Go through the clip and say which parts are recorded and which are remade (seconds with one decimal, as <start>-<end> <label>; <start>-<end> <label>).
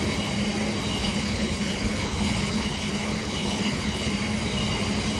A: 0.0-1.0 recorded; 1.0-4.1 remade; 4.1-5.2 recorded